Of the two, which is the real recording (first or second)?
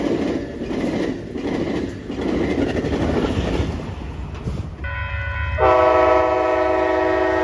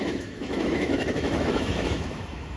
first